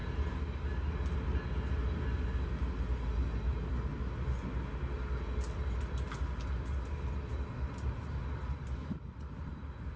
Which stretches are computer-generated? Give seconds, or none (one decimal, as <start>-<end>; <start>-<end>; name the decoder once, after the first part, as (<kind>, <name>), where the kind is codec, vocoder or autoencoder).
none